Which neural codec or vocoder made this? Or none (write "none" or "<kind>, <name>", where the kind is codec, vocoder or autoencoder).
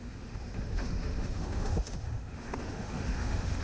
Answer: autoencoder, DAC-VAE